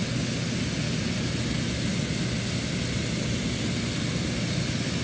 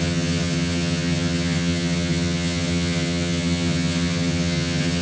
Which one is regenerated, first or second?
second